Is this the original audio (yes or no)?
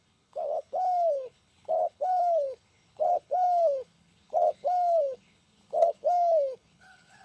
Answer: no